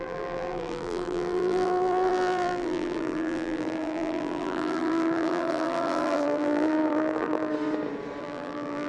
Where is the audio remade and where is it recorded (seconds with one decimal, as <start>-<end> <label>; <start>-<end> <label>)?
0.0-7.5 remade; 7.5-8.2 recorded; 8.2-8.9 remade